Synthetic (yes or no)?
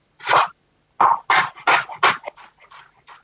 no